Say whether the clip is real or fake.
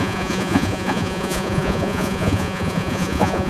fake